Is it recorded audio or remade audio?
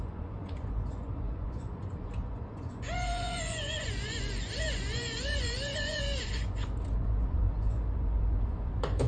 remade